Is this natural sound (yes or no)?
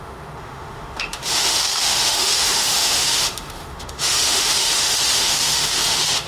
no